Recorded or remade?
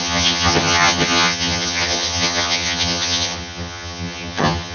remade